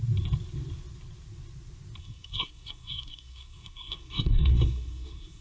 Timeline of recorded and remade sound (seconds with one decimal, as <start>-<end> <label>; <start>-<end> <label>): 0.0-2.0 recorded; 2.0-5.4 remade